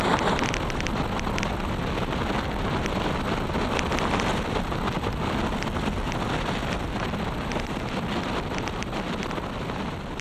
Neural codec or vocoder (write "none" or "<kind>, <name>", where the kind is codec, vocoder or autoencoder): vocoder, BigVGAN v2